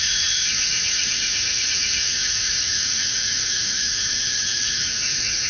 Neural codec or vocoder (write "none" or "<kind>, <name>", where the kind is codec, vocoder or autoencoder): autoencoder, DAC-VAE